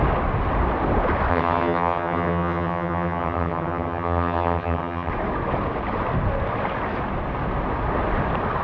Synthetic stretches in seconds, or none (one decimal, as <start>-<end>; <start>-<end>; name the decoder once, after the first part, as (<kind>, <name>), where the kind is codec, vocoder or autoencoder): 1.3-5.1 (vocoder, HiFi-GAN)